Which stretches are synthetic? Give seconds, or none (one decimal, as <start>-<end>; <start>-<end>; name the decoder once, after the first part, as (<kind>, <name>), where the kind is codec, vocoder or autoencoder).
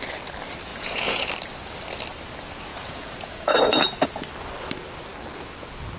0.7-1.3 (vocoder, Vocos); 2.7-4.2